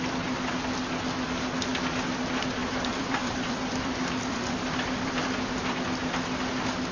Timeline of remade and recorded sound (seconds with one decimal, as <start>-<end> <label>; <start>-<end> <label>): 0.0-2.6 recorded; 2.6-5.4 remade; 5.4-6.9 recorded